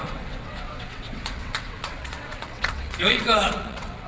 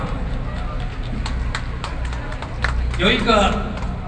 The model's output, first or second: first